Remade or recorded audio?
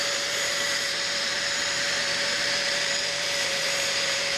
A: remade